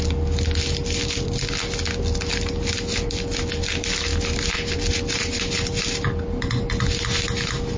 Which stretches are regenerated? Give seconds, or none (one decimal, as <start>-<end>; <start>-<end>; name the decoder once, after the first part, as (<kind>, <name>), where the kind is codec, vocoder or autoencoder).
none